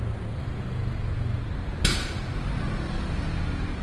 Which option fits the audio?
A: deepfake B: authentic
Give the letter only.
B